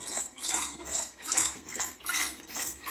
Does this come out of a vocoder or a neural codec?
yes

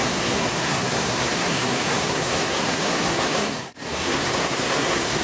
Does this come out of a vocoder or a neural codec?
yes